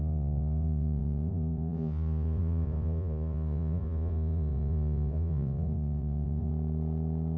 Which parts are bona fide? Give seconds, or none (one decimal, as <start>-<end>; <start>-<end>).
6.5-7.4